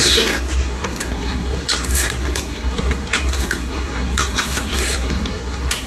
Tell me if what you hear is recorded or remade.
remade